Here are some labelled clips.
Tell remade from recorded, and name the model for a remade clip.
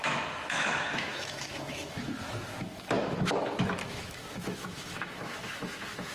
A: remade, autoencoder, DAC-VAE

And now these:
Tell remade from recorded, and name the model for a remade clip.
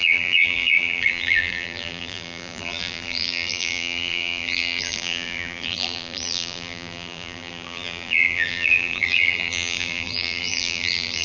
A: remade, vocoder, BigVGAN v2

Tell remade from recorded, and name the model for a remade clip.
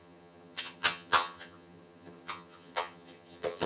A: remade, vocoder, HiFi-GAN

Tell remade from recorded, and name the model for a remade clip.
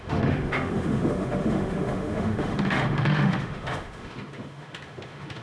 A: remade, autoencoder, DAC-VAE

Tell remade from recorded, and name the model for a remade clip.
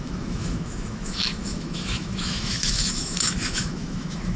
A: remade, autoencoder, DAC-VAE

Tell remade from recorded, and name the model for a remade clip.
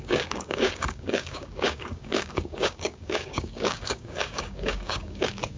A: remade, codec, DAC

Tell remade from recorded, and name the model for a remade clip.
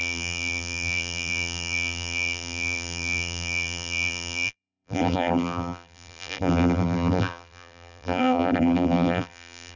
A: remade, vocoder, BigVGAN v2